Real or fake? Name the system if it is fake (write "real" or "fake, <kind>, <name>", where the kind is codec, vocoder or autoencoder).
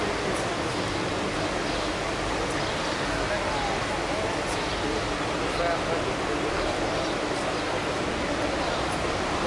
real